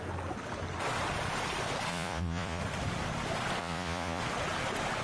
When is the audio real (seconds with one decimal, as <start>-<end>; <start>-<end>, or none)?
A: 0.0-1.9; 2.6-3.6; 4.2-5.0